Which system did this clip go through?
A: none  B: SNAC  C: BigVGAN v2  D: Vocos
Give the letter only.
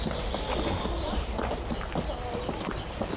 A